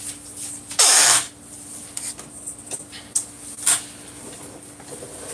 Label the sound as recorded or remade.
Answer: recorded